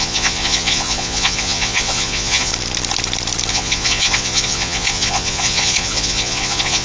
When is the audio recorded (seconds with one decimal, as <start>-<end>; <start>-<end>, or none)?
2.5-3.5

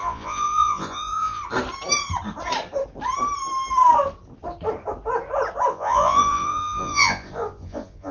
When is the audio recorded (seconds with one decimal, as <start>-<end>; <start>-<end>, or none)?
1.4-5.7

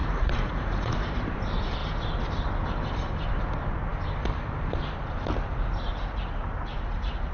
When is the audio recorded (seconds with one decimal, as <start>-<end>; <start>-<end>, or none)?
0.9-7.3

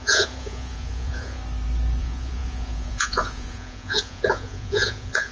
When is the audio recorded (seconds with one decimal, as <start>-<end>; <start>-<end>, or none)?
1.4-2.0